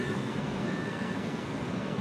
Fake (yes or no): yes